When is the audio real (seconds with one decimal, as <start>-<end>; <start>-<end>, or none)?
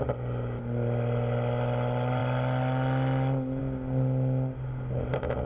0.0-5.5